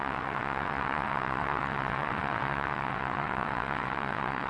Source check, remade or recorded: remade